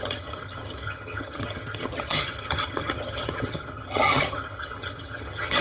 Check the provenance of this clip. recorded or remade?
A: remade